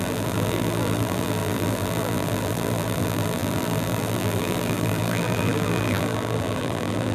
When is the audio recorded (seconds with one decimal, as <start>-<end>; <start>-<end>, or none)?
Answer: none